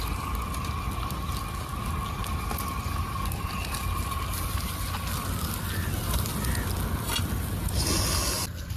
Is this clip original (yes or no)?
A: yes